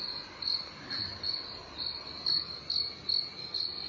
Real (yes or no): yes